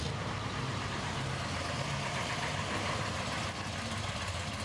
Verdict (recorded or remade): recorded